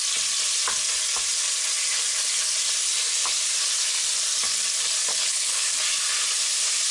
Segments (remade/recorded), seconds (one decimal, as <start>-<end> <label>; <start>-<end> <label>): 0.0-5.1 recorded; 5.1-5.7 remade; 5.7-6.9 recorded